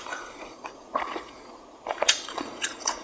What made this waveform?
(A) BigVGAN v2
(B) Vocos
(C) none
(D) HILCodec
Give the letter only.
B